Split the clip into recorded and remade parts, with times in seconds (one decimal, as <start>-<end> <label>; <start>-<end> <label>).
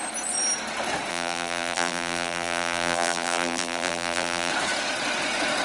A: 0.0-1.1 recorded; 1.1-4.5 remade; 4.5-5.6 recorded